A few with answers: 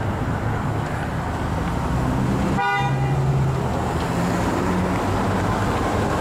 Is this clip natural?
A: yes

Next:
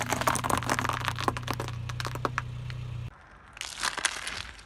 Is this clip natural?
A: yes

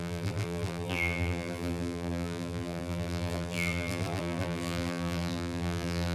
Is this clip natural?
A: no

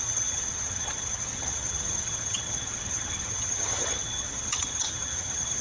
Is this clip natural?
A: no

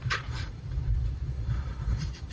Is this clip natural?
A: no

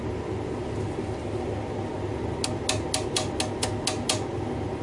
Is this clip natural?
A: yes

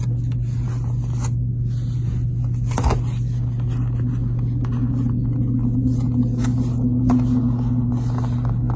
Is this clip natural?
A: yes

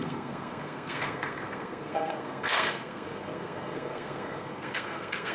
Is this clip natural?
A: no